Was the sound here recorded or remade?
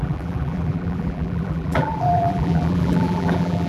remade